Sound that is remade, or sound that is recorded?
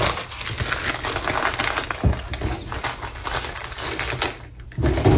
recorded